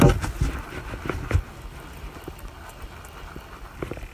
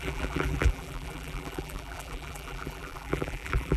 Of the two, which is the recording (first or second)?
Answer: first